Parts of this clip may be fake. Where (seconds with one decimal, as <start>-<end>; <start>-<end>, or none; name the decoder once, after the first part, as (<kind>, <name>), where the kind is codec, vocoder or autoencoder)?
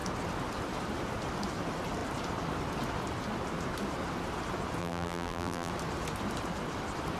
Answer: 4.8-5.7 (vocoder, BigVGAN v2)